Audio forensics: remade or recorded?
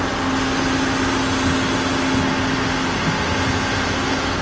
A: recorded